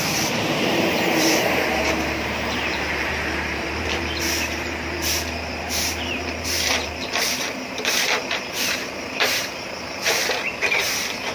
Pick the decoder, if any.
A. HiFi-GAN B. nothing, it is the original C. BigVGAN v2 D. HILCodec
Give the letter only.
C